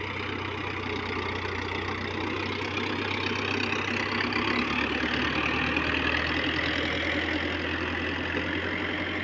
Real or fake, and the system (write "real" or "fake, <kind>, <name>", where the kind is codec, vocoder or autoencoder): real